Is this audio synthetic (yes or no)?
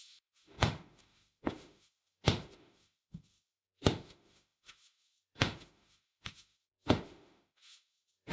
yes